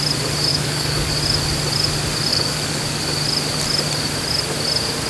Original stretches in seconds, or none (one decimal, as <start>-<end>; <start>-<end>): 0.0-0.5; 1.1-2.3; 3.0-5.1